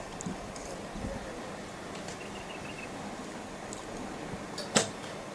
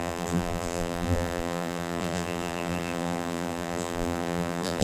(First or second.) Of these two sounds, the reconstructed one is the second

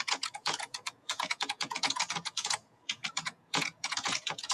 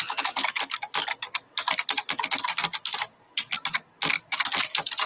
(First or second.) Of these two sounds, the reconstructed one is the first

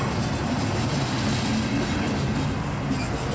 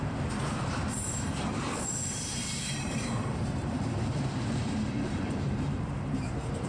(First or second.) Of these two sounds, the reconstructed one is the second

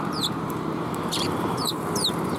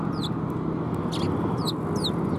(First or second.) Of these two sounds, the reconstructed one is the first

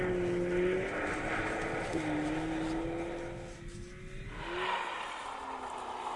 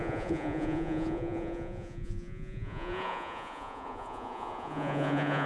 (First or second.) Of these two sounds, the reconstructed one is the second